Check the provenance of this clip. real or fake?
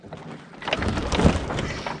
real